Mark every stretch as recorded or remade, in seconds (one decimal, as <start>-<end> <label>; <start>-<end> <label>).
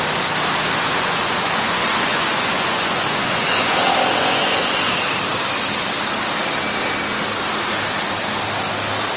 0.0-0.8 recorded; 0.8-3.8 remade; 3.8-4.2 recorded; 4.2-4.9 remade; 4.9-9.2 recorded